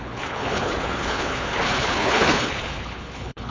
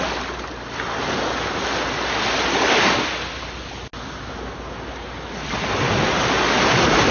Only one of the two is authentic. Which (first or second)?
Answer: second